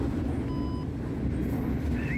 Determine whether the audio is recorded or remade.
recorded